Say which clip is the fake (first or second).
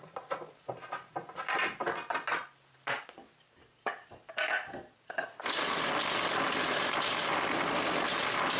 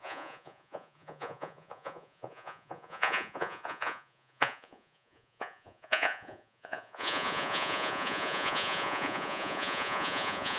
second